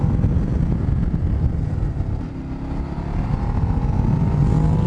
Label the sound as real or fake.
real